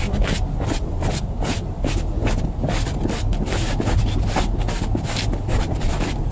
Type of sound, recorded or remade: recorded